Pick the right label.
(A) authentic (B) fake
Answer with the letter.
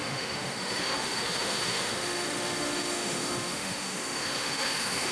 B